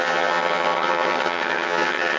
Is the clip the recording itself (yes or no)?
no